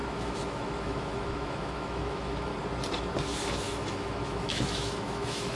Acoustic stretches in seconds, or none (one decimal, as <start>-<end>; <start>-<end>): 2.5-3.5